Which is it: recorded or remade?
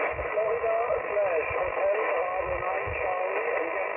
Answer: recorded